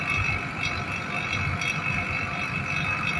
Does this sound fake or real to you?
real